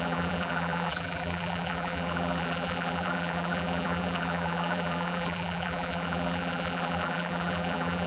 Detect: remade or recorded remade